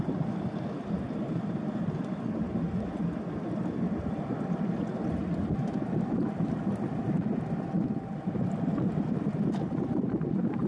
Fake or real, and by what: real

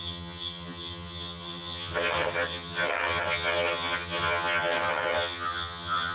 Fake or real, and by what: fake, vocoder, HiFi-GAN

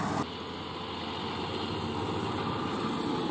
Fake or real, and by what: real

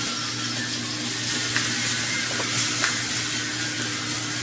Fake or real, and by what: real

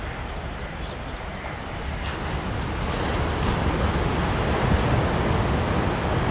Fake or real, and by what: real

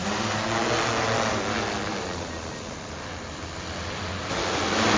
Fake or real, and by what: real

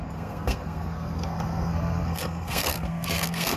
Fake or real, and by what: fake, codec, SNAC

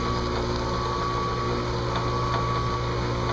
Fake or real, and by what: real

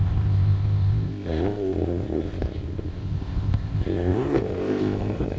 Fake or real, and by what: fake, codec, ZipCodec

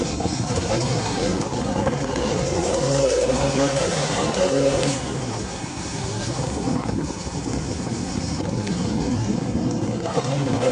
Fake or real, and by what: fake, codec, SNAC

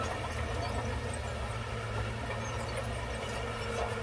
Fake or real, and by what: real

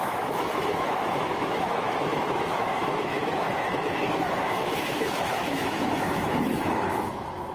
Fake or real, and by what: fake, autoencoder, DAC-VAE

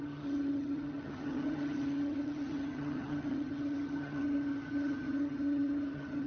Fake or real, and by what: fake, vocoder, HiFi-GAN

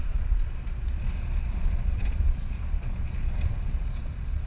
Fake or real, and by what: fake, vocoder, Vocos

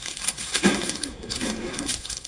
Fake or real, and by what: fake, codec, SNAC